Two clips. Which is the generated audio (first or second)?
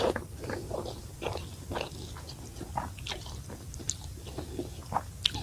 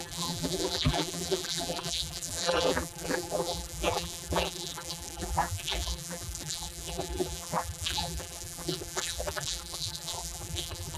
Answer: second